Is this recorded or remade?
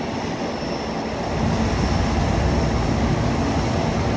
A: recorded